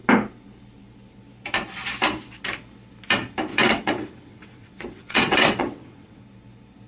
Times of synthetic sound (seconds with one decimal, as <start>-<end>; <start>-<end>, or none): 3.5-6.2